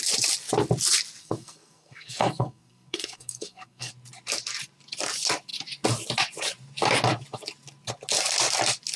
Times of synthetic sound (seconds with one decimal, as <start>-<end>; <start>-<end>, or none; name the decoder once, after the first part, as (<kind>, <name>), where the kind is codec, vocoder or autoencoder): 1.2-3.9 (codec, SNAC)